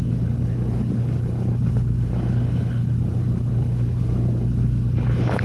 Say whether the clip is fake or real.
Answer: fake